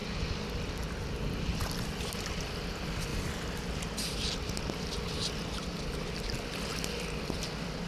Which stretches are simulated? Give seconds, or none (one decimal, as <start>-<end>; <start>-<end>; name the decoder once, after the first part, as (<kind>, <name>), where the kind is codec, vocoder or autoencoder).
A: none